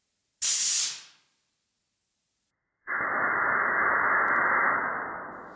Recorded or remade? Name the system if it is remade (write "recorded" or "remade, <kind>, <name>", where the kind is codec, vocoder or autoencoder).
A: recorded